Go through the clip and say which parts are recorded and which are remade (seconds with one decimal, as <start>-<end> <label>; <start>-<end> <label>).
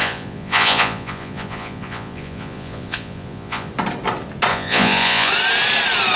0.0-3.7 remade; 3.7-4.5 recorded; 4.5-5.3 remade; 5.3-6.2 recorded